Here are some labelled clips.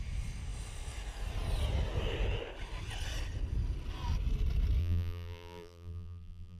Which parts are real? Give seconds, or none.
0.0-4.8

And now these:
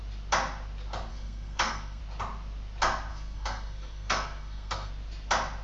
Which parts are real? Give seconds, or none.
0.0-1.1; 2.0-3.1; 4.9-5.6

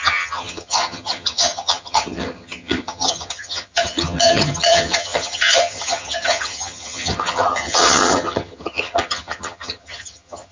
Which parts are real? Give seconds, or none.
none